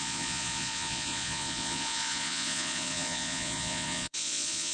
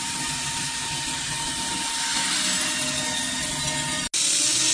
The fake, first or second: first